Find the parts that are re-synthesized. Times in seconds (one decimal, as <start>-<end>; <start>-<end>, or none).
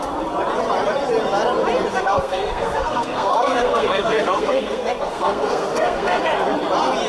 1.9-6.2